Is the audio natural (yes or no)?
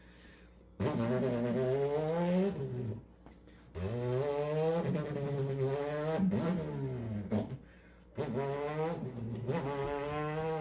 yes